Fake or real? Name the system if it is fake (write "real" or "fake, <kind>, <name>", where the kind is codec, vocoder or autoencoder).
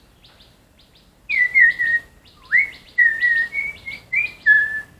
real